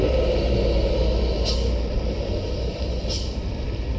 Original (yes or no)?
yes